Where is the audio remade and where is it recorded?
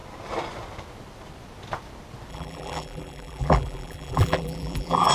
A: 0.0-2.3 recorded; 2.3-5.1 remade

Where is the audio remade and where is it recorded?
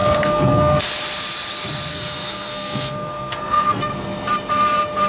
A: 0.0-0.8 remade; 0.8-1.9 recorded; 1.9-3.9 remade; 3.9-5.1 recorded